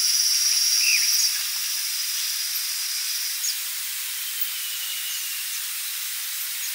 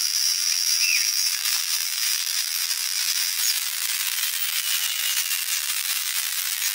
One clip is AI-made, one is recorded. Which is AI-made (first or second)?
second